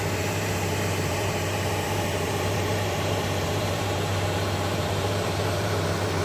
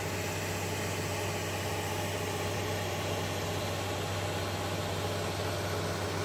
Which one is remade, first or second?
first